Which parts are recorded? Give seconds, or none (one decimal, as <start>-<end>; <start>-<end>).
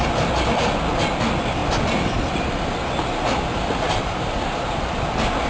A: 0.0-5.5